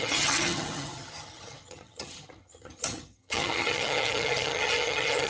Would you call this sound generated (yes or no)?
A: yes